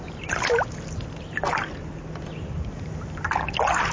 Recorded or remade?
recorded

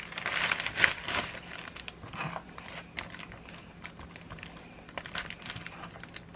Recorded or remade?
recorded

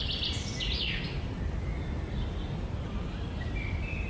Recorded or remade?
recorded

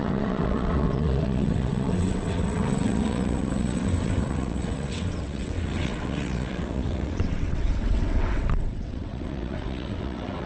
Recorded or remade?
remade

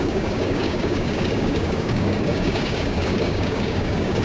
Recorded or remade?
remade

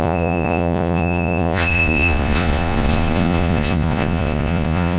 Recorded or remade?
remade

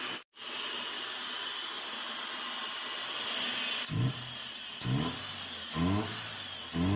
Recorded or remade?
recorded